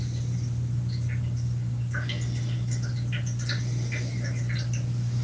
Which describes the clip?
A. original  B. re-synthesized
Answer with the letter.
A